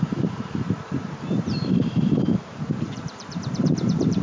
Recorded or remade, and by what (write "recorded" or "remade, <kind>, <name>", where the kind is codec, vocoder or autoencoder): remade, vocoder, BigVGAN v2